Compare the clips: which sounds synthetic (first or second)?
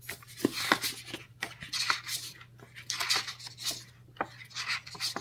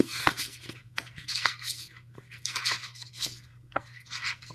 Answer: second